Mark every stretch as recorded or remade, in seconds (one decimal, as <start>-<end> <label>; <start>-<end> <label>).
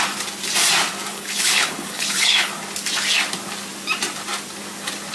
0.0-1.1 recorded; 1.1-2.5 remade; 2.5-5.1 recorded